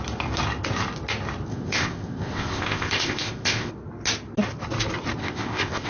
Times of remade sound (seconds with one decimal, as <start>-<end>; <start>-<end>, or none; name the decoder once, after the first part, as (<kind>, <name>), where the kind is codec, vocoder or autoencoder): 1.5-3.7 (codec, ZipCodec); 5.2-5.9